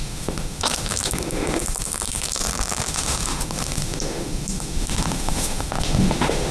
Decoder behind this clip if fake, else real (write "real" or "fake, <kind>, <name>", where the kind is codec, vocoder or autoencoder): fake, autoencoder, DAC-VAE